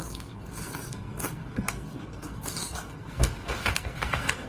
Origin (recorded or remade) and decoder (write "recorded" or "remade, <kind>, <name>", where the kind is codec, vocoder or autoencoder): remade, codec, SNAC